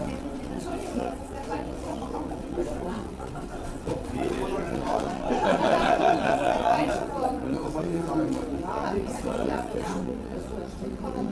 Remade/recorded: remade